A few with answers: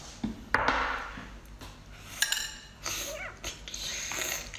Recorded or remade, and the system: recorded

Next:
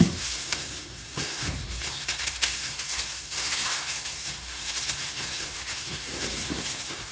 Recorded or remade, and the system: remade, codec, SNAC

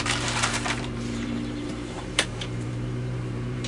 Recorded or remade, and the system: remade, vocoder, BigVGAN v2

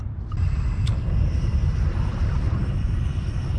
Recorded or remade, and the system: recorded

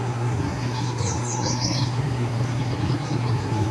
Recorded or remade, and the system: remade, codec, SNAC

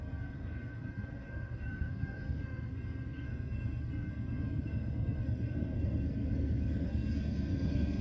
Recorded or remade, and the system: remade, codec, SNAC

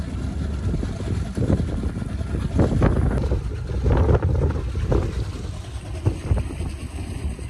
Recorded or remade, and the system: recorded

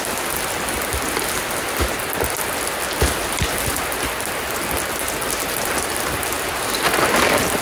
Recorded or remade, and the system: recorded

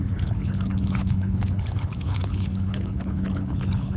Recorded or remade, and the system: remade, codec, HILCodec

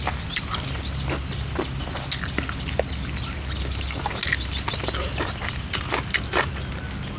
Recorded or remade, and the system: recorded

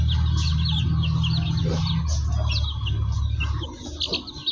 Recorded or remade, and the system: recorded